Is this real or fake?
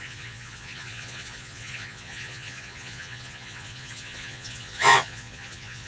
fake